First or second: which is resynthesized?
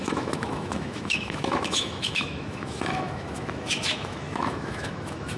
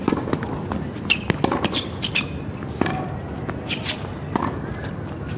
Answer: first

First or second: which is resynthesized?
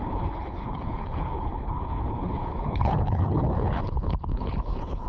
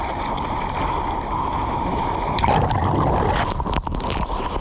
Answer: first